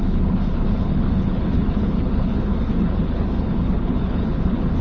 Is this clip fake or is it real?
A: fake